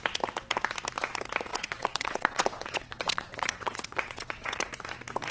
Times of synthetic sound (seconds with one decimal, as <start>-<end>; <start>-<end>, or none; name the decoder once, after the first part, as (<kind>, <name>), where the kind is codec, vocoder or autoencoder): 1.5-4.7 (vocoder, WaveNeXt)